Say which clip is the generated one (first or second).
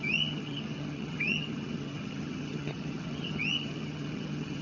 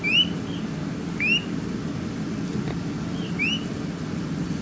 first